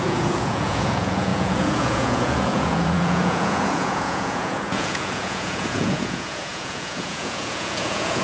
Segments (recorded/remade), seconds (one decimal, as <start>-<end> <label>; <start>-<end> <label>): 0.0-8.2 remade